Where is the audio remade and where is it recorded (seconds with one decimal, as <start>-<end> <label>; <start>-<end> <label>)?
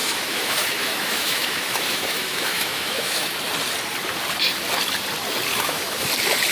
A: 0.0-3.3 remade; 3.3-5.5 recorded; 5.5-6.1 remade; 6.1-6.5 recorded